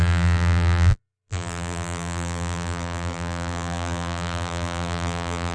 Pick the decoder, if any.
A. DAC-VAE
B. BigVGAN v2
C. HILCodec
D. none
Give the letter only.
B